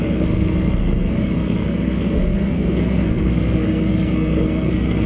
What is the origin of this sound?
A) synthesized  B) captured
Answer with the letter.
A